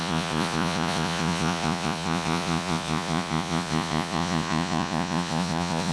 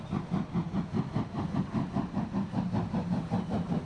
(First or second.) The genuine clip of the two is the second